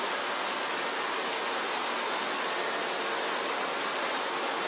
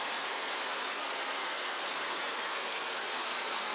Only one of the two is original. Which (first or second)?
first